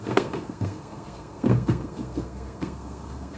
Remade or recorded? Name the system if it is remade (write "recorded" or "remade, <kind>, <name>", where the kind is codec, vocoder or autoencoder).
remade, codec, SNAC